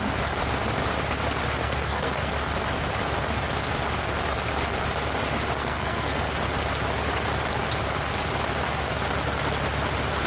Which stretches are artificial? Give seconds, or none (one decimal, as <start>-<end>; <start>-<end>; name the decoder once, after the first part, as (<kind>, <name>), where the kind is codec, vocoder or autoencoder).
1.6-2.3 (codec, SNAC); 5.6-6.2

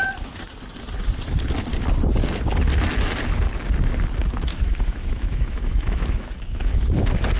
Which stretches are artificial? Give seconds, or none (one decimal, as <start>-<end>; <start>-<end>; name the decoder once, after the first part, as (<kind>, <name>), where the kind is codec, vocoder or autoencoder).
4.5-7.0 (autoencoder, DAC-VAE)

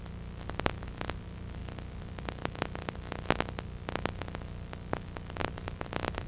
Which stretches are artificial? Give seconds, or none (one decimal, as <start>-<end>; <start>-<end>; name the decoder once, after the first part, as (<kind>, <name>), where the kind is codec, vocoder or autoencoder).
1.6-4.2 (vocoder, BigVGAN v2); 5.4-6.3

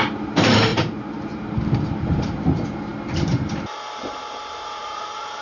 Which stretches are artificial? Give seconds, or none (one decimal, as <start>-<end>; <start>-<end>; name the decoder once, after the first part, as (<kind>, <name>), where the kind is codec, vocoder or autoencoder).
0.0-5.4 (vocoder, BigVGAN v2)

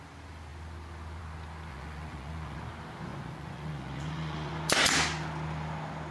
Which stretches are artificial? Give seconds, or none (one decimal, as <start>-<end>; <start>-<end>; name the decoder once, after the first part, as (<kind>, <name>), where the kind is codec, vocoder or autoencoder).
1.7-2.6 (vocoder, Vocos); 3.1-4.5

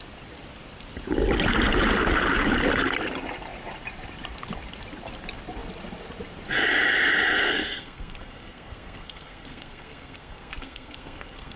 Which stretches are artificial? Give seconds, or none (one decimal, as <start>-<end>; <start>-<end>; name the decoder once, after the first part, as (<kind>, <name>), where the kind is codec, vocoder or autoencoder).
7.4-11.6 (codec, SNAC)

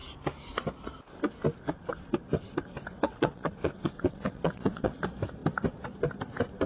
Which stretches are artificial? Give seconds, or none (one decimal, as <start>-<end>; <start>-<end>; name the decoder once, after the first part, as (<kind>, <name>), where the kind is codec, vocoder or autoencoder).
2.9-4.9 (vocoder, WaveNeXt)